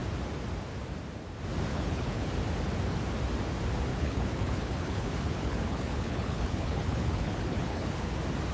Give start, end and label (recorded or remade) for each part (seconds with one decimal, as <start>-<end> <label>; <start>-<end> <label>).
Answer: 0.0-1.7 recorded; 1.7-2.3 remade; 2.3-3.9 recorded; 3.9-8.1 remade; 8.1-8.5 recorded